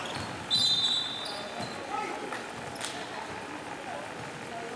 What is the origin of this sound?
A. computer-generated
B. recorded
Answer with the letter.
B